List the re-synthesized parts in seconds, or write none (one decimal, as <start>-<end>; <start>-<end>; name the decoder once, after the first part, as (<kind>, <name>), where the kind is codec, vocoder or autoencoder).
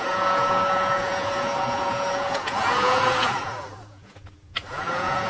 0.0-5.3 (vocoder, Vocos)